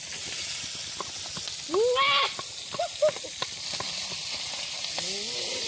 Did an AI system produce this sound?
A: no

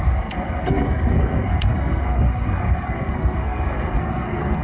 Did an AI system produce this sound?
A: yes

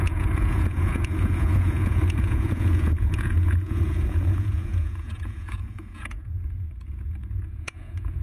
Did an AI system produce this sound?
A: yes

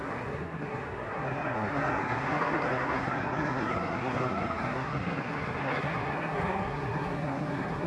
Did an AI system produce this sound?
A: yes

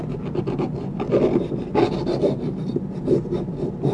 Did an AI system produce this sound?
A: no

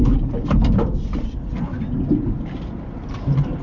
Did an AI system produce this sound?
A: no